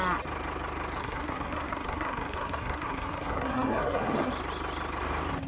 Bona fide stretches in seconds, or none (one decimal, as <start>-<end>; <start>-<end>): 0.0-1.0; 4.3-5.5